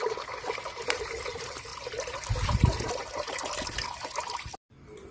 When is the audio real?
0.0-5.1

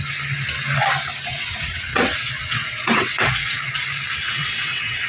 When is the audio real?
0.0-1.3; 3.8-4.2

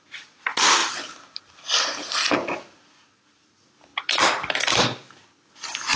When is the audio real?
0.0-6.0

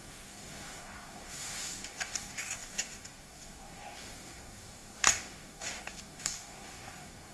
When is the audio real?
none